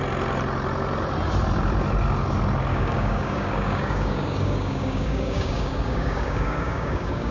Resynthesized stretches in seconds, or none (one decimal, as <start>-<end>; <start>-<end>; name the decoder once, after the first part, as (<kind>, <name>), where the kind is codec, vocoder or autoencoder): 2.7-7.3 (codec, DAC)